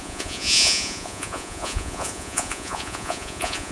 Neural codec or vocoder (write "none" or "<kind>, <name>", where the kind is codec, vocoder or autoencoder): vocoder, Vocos